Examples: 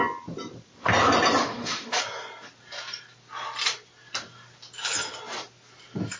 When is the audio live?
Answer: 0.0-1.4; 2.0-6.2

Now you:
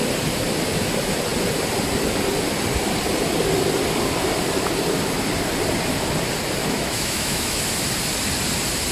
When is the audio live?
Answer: 0.0-6.6; 7.6-8.9

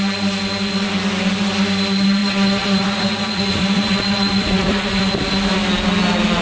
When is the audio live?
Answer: 0.0-2.2; 5.1-6.4

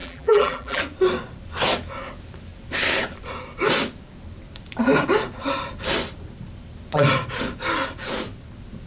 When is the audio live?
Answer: 0.8-8.9

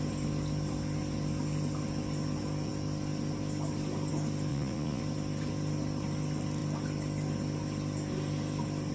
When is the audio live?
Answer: 0.0-4.5; 5.0-8.9